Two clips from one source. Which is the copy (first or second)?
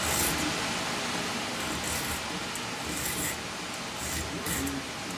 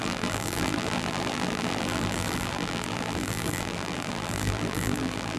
second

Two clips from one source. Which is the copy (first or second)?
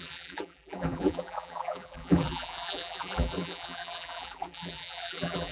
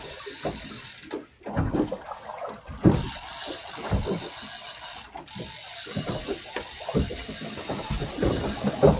first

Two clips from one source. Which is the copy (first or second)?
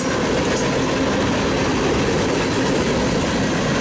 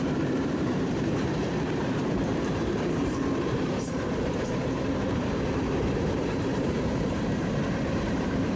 second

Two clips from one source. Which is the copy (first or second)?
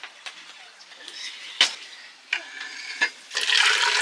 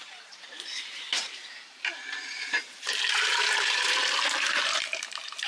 second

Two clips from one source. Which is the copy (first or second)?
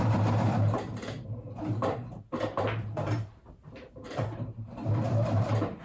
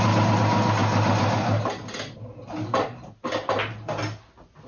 first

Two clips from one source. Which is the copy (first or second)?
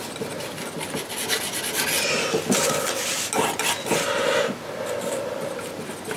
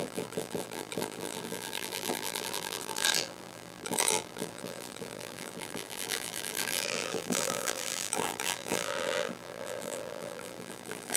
second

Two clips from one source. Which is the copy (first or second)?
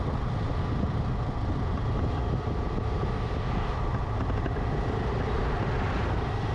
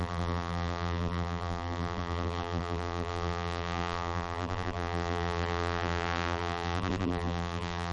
second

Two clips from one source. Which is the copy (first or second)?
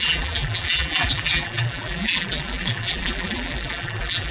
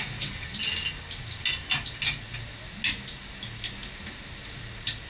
first